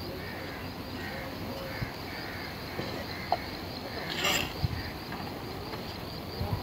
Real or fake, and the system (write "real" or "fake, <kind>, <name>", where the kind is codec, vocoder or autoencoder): real